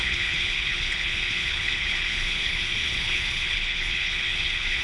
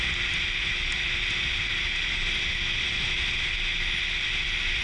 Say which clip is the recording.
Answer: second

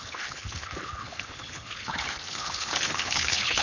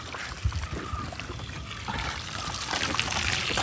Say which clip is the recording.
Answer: second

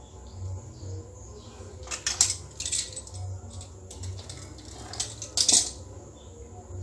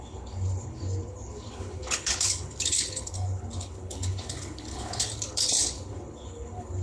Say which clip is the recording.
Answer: first